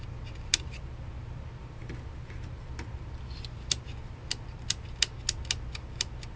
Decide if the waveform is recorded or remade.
recorded